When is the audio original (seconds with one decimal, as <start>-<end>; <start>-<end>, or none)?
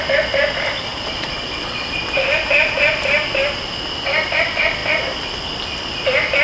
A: 0.0-0.9; 1.9-6.4